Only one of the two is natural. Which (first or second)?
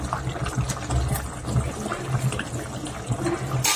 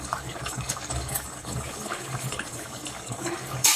first